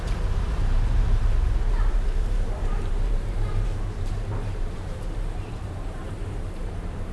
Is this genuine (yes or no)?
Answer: no